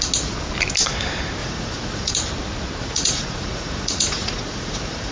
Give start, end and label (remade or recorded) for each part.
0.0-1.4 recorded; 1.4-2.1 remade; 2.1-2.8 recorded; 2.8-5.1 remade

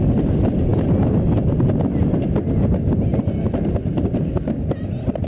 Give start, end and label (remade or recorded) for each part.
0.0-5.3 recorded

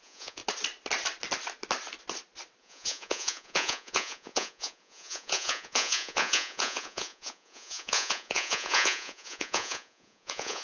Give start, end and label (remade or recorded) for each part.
0.0-0.4 remade; 0.4-2.6 recorded; 2.6-10.6 remade

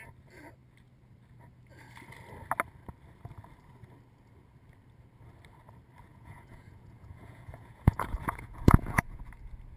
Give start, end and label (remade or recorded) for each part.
0.0-6.1 recorded; 6.1-9.2 remade; 9.2-9.8 recorded

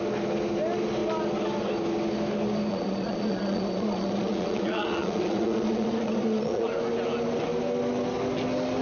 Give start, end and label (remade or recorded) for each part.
0.0-2.7 recorded; 2.7-6.7 remade; 6.7-8.8 recorded

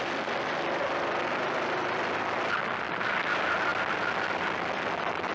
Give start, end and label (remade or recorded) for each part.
0.0-5.3 recorded

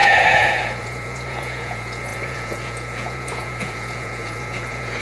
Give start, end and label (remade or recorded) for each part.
0.0-5.0 remade